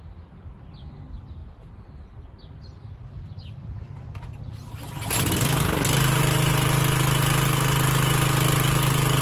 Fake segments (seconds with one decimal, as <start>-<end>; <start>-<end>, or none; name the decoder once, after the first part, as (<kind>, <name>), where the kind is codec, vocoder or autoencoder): 1.4-6.2 (vocoder, BigVGAN v2)